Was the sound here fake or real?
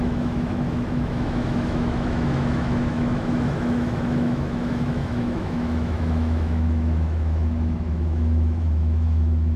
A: fake